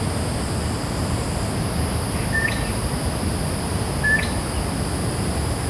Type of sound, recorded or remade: recorded